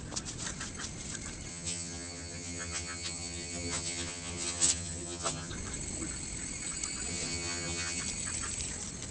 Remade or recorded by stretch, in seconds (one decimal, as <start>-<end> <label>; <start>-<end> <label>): 0.0-1.5 recorded; 1.5-5.5 remade; 5.5-7.1 recorded; 7.1-8.0 remade; 8.0-9.1 recorded